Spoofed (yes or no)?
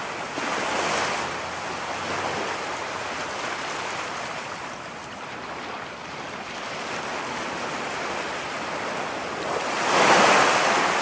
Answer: no